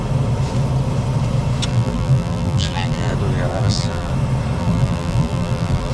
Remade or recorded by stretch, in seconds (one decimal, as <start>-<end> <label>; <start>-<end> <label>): 0.0-1.7 recorded; 1.7-3.1 remade; 3.1-3.5 recorded; 3.5-4.1 remade; 4.1-4.6 recorded; 4.6-5.9 remade